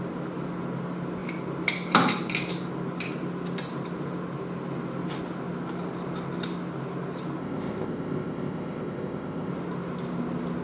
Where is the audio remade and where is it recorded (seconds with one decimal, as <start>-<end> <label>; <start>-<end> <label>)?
0.0-7.4 recorded; 7.4-9.5 remade; 9.5-10.6 recorded

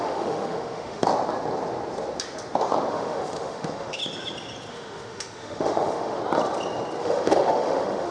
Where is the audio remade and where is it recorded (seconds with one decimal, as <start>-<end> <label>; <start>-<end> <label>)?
0.0-1.1 remade; 1.1-2.9 recorded; 2.9-4.0 remade; 4.0-4.7 recorded; 4.7-6.2 remade; 6.2-7.0 recorded; 7.0-8.1 remade

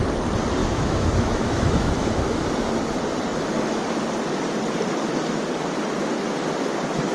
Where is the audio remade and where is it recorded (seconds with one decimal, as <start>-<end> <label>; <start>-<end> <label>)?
0.0-0.6 recorded; 0.6-2.4 remade; 2.4-7.1 recorded